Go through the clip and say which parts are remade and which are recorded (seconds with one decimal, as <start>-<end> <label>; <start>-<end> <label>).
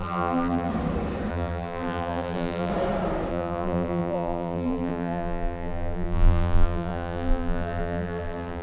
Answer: 0.0-0.7 remade; 0.7-1.3 recorded; 1.3-2.7 remade; 2.7-3.3 recorded; 3.3-8.6 remade